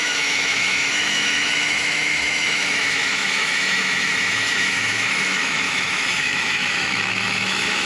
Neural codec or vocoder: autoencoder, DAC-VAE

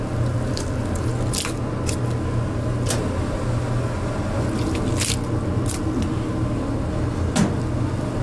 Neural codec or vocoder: none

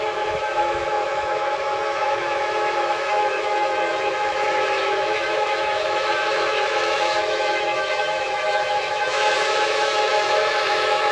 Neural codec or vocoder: autoencoder, DAC-VAE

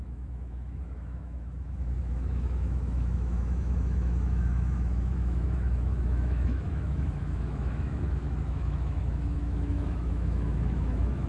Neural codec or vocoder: autoencoder, DAC-VAE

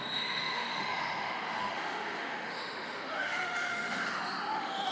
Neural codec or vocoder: autoencoder, DAC-VAE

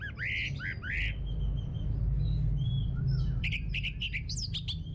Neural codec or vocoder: none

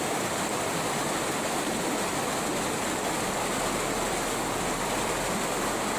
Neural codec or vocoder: none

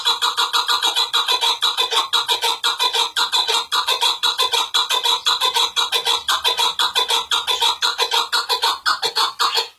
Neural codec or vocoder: none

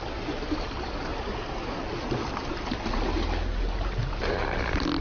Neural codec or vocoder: none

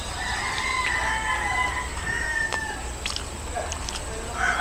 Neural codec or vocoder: none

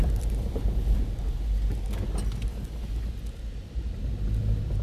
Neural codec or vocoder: none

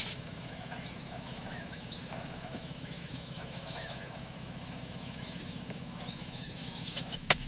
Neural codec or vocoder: autoencoder, DAC-VAE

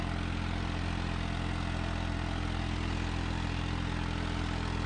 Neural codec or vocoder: none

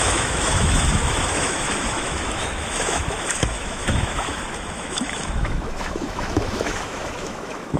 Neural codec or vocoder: autoencoder, DAC-VAE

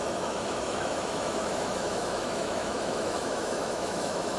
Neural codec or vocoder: autoencoder, DAC-VAE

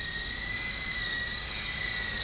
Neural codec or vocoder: none